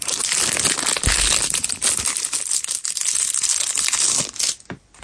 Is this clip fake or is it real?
real